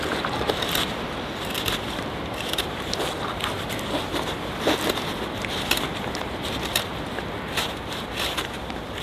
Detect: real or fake fake